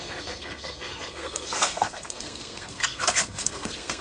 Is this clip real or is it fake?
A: fake